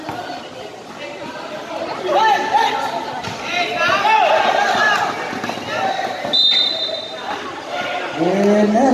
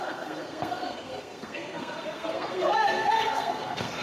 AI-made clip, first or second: second